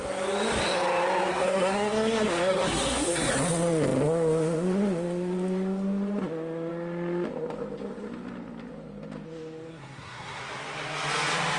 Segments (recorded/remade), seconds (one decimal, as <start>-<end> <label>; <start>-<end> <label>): 0.0-1.3 recorded; 1.3-3.3 remade; 3.3-9.7 recorded; 9.7-10.4 remade; 10.4-11.6 recorded

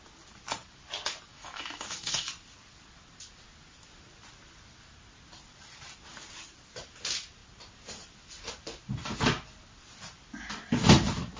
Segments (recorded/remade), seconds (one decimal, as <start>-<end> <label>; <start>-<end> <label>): 0.0-1.3 recorded; 1.3-2.3 remade; 2.3-11.4 recorded

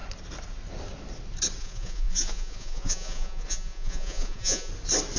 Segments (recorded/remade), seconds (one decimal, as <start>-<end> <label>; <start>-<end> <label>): 0.0-1.6 recorded; 1.6-4.7 remade; 4.7-5.2 recorded

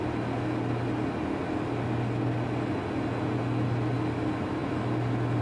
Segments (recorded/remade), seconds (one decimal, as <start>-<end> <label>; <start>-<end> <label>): 0.0-5.4 recorded

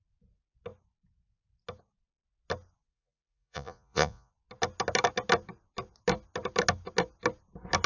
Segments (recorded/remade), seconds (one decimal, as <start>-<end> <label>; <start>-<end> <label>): 0.0-2.9 recorded; 2.9-4.3 remade; 4.3-7.9 recorded

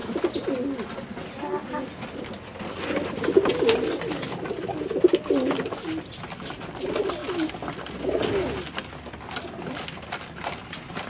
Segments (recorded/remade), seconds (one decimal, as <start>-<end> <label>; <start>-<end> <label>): 0.0-11.1 recorded